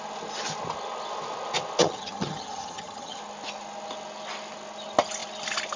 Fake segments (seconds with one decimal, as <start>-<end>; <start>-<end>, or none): 1.8-3.2